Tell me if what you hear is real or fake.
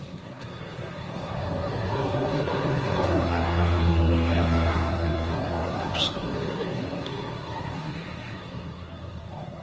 fake